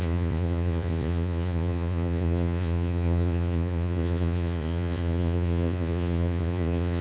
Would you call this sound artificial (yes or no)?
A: yes